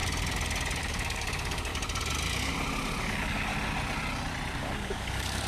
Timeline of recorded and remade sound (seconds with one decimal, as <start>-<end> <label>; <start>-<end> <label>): 0.0-0.8 recorded; 0.8-1.7 remade; 1.7-3.0 recorded; 3.0-3.5 remade; 3.5-4.6 recorded; 4.6-5.5 remade